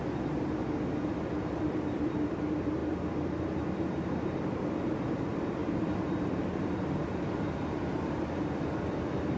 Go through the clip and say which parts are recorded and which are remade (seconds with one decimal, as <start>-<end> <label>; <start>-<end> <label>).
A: 0.0-0.6 remade; 0.6-1.2 recorded; 1.2-2.8 remade; 2.8-3.6 recorded; 3.6-9.4 remade